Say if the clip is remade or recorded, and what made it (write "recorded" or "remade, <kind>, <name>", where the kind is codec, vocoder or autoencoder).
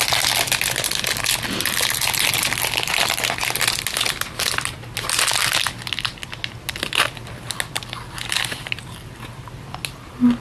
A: recorded